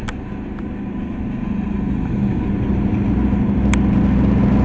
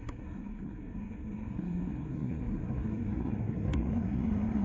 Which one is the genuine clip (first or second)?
first